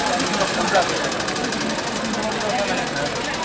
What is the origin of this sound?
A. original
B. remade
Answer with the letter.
A